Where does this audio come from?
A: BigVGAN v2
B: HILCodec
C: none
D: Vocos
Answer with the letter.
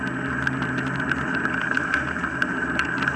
C